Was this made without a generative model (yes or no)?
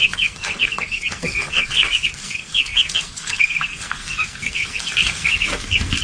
no